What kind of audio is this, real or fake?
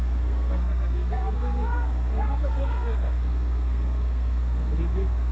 fake